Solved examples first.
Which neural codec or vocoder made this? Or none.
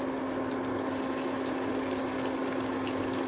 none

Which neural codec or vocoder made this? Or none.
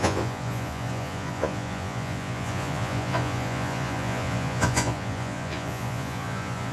vocoder, Vocos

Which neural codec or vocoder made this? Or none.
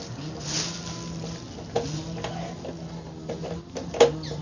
none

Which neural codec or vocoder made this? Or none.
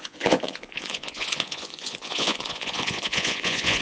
vocoder, Vocos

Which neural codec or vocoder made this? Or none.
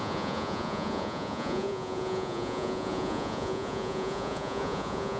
vocoder, Vocos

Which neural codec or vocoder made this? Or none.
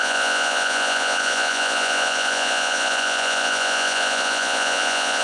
vocoder, Vocos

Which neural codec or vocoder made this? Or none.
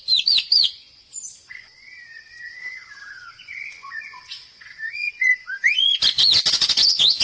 vocoder, Vocos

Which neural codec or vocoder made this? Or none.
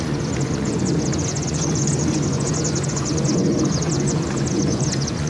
vocoder, Vocos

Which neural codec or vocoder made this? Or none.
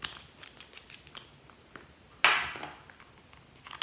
none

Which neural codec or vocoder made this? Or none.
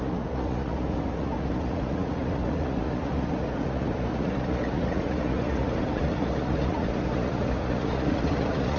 vocoder, Vocos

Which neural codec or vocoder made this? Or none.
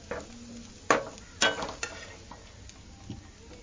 none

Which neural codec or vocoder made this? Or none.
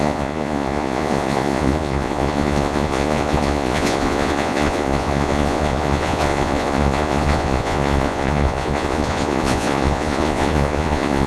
vocoder, Vocos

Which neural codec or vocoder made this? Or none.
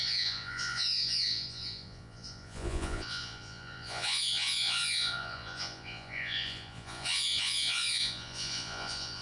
vocoder, Vocos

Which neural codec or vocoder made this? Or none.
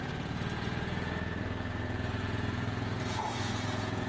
vocoder, Vocos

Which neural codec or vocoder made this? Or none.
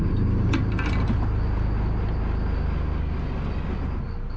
none